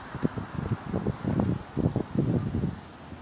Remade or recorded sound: recorded